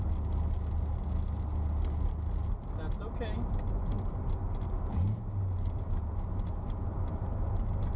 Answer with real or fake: real